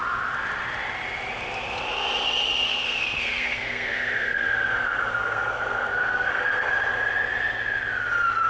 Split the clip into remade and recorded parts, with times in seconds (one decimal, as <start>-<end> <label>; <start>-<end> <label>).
0.0-2.7 recorded; 2.7-6.7 remade; 6.7-8.5 recorded